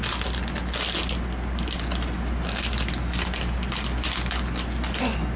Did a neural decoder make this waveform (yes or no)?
no